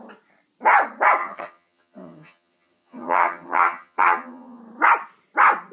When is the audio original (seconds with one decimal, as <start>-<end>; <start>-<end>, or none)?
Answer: 0.0-1.2; 4.6-5.7